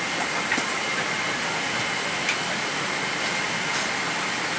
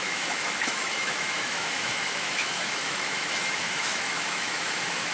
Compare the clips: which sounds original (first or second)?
first